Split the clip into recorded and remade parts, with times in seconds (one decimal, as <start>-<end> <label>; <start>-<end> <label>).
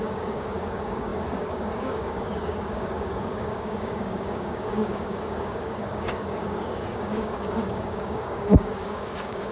0.0-9.5 remade